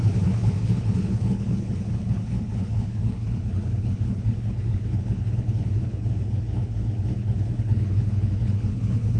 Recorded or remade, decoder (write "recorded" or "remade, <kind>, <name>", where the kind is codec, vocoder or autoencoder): remade, codec, HILCodec